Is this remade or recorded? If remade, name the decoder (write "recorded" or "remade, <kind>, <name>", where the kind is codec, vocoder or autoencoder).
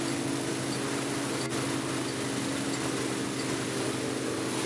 recorded